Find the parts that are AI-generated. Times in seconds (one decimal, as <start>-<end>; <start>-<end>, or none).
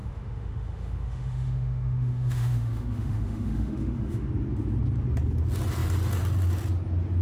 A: 0.0-4.3